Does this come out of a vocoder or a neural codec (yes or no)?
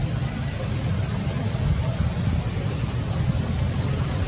no